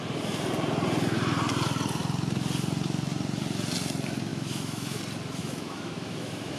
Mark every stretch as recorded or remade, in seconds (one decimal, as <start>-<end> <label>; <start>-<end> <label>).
0.0-4.3 recorded; 4.3-5.0 remade; 5.0-5.4 recorded; 5.4-6.6 remade